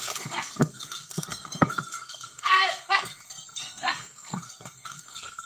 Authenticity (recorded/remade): remade